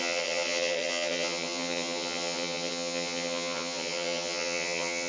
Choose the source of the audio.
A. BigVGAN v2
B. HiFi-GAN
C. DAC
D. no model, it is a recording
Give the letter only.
B